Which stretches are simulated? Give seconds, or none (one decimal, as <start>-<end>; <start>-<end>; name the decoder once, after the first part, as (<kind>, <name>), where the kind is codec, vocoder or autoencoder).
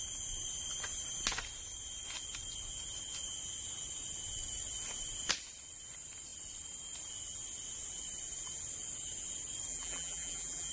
9.7-10.7 (vocoder, BigVGAN v2)